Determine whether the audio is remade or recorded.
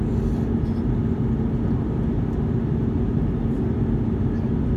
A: recorded